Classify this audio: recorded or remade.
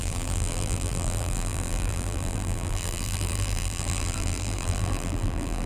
remade